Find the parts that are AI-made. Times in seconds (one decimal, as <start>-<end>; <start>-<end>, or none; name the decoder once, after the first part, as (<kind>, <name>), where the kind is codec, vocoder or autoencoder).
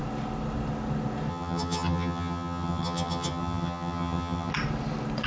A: 1.3-4.5 (vocoder, HiFi-GAN)